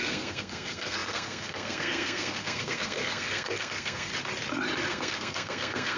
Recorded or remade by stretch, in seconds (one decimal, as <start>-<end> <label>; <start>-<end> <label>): 0.0-4.1 remade; 4.1-4.9 recorded; 4.9-6.0 remade